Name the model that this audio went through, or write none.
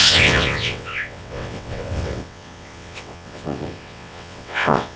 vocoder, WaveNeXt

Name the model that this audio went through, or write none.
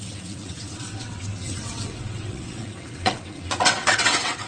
vocoder, WaveNeXt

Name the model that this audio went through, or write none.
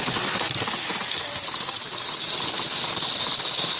none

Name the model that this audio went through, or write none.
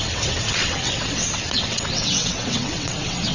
vocoder, WaveNeXt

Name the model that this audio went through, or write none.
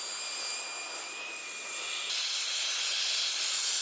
none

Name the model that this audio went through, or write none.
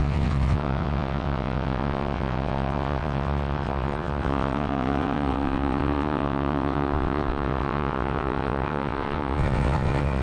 vocoder, WaveNeXt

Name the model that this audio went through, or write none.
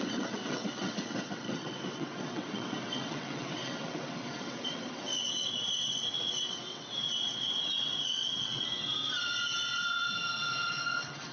vocoder, WaveNeXt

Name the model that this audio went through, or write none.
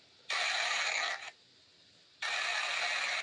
none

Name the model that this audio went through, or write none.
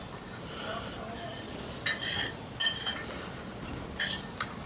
none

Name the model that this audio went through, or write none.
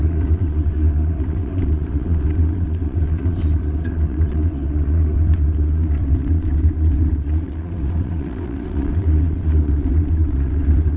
vocoder, WaveNeXt